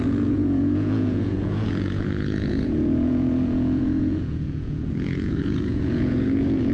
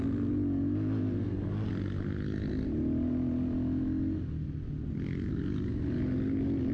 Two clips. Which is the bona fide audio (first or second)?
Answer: second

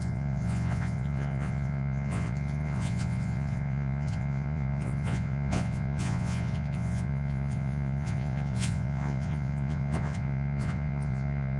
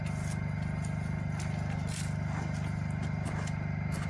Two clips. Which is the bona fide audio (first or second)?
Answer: second